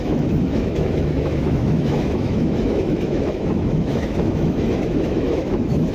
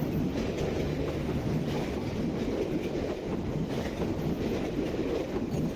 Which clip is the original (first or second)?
second